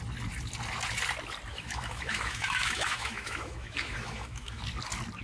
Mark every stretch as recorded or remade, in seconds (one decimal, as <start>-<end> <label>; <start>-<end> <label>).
0.0-1.5 recorded; 1.5-4.6 remade; 4.6-5.2 recorded